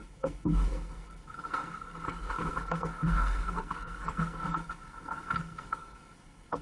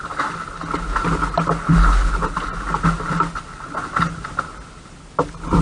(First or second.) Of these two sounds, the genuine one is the second